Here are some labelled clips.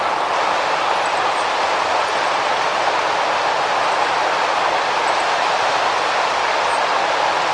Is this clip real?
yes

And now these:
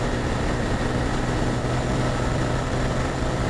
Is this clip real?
no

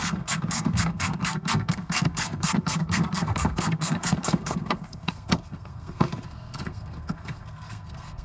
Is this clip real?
no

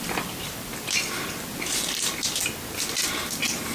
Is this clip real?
yes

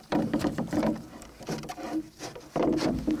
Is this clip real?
no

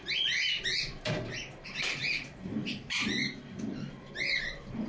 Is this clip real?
no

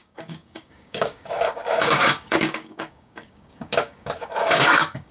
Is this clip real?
no